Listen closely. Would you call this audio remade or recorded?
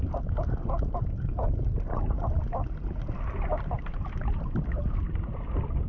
recorded